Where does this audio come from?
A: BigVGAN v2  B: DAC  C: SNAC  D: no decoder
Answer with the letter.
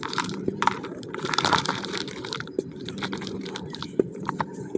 A